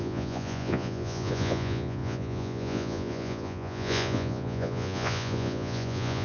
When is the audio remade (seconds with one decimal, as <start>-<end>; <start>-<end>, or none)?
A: 0.0-6.2